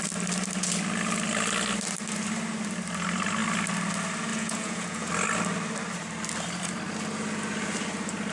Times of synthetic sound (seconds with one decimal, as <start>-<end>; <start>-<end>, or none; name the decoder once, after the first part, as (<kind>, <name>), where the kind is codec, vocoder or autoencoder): 4.3-5.1 (vocoder, Vocos)